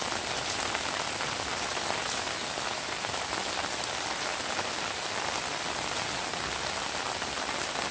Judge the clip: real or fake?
real